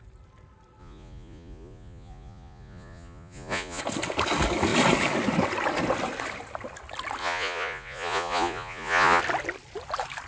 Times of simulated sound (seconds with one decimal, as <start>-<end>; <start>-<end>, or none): 0.8-3.8; 7.2-9.2